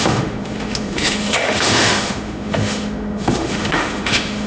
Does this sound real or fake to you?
fake